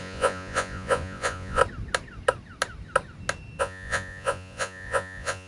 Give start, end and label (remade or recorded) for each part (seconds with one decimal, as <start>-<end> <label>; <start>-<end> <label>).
0.0-1.6 remade; 1.6-3.6 recorded; 3.6-5.5 remade